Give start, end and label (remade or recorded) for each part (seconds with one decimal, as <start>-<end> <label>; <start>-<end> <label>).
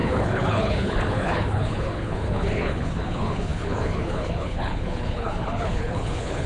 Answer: 0.0-6.5 remade